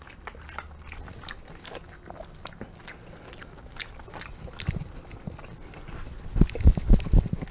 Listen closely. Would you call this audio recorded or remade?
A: recorded